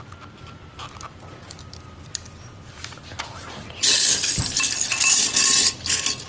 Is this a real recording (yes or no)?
no